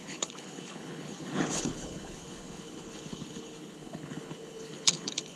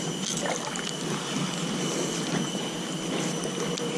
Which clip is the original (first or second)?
second